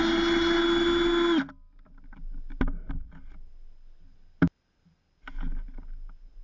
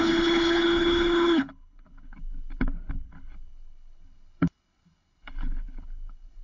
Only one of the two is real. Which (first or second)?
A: first